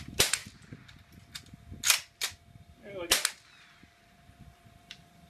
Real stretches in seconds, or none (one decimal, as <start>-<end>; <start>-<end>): 0.4-3.6